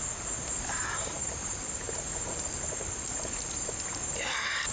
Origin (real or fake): real